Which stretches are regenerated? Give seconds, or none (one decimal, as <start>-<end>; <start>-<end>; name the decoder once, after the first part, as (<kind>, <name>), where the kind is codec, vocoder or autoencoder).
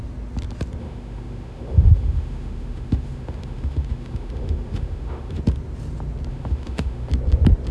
0.8-5.4 (autoencoder, DAC-VAE); 6.3-7.1